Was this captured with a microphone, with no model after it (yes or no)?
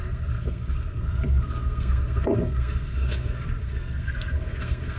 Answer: no